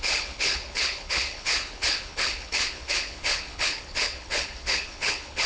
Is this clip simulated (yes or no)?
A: yes